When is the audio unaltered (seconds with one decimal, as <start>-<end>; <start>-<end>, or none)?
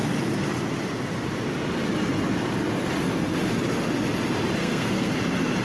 0.0-4.6; 5.1-5.6